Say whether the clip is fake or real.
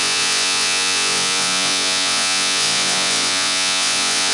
fake